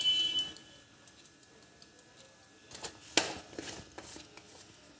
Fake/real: real